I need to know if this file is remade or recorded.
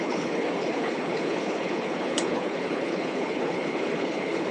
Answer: remade